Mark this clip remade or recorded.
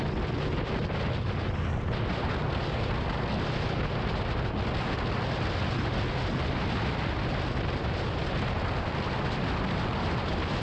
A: recorded